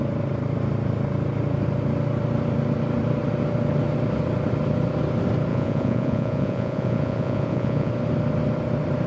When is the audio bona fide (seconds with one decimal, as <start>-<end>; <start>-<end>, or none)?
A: 0.0-5.5; 7.9-9.1